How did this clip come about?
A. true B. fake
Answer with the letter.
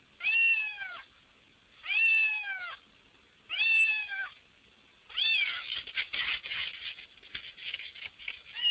A